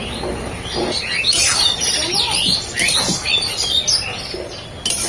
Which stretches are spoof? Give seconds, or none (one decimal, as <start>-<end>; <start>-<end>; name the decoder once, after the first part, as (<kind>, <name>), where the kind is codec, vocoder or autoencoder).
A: none